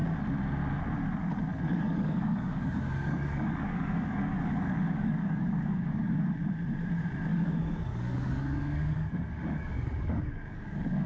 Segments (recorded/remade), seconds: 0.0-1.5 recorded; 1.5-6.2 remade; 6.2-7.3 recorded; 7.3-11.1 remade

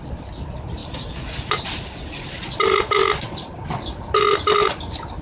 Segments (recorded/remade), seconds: 0.0-5.2 recorded

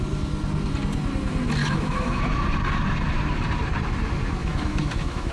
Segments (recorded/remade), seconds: 0.0-1.6 recorded; 1.6-2.2 remade; 2.2-4.4 recorded; 4.4-5.3 remade